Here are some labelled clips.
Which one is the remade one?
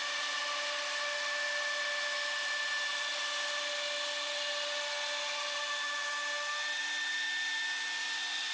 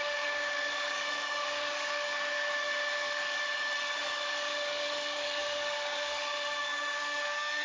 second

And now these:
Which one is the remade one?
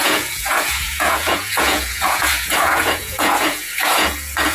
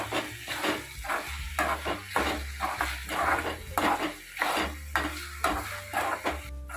first